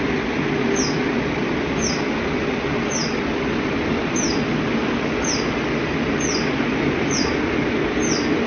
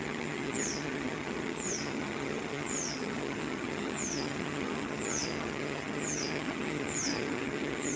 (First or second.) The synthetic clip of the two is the second